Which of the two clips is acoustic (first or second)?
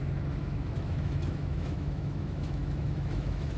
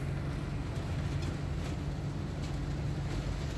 second